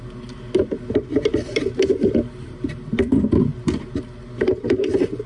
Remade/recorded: recorded